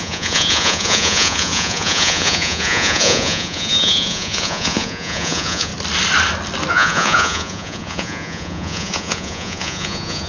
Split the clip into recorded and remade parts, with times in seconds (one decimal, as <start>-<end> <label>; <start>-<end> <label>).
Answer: 0.0-5.7 remade; 5.7-6.7 recorded; 6.7-10.3 remade